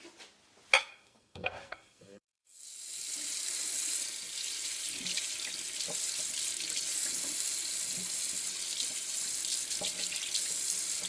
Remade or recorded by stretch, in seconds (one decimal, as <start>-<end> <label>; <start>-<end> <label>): 0.0-0.8 recorded; 0.8-2.6 remade; 2.6-11.1 recorded